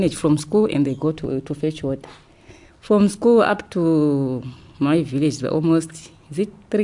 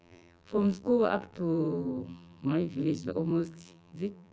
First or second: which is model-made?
second